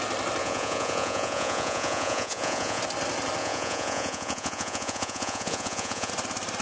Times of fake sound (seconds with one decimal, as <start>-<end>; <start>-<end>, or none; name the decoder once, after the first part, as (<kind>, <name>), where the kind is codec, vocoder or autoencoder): 0.4-2.8 (vocoder, Vocos); 3.4-6.1